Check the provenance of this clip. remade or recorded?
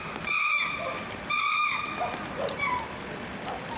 recorded